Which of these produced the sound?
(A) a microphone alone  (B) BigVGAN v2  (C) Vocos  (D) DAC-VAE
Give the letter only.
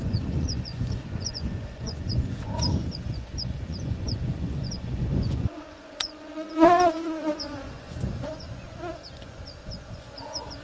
C